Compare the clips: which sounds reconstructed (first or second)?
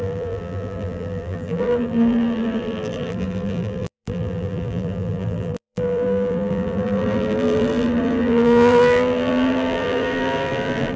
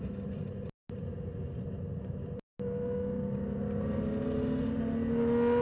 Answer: first